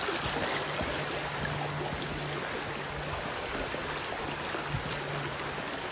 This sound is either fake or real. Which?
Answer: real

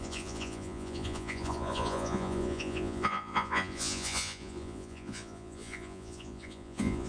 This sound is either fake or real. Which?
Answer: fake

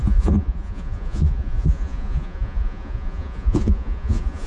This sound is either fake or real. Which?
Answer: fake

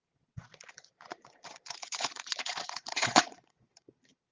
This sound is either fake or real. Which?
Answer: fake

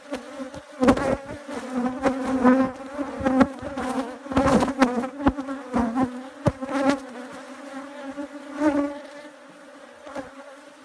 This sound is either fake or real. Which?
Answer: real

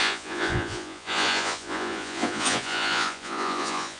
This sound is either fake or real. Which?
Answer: fake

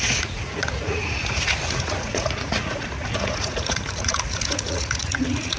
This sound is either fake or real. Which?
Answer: fake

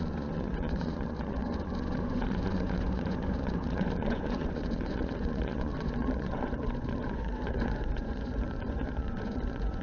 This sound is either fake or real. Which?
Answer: fake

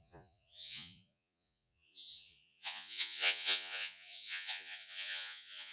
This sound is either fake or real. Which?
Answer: fake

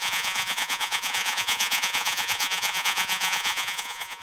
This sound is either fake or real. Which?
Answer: fake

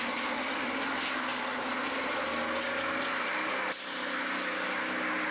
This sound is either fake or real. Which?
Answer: real